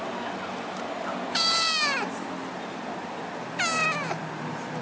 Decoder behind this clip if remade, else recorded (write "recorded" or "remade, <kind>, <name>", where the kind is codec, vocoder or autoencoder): recorded